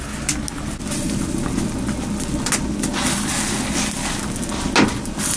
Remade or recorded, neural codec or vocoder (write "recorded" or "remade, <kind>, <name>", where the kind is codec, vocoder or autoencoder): recorded